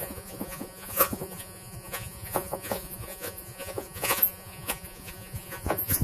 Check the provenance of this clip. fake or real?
fake